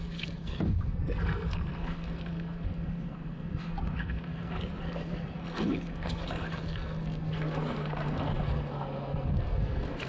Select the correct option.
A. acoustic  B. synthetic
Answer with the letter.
B